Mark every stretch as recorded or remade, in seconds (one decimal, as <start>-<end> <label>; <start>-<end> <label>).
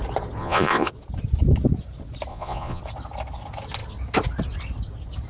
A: 0.0-0.4 recorded; 0.4-0.9 remade; 0.9-2.3 recorded; 2.3-2.8 remade; 2.8-5.3 recorded